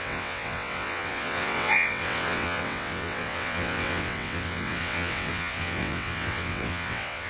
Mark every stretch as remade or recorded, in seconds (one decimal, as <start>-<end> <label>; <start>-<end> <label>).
0.0-7.3 remade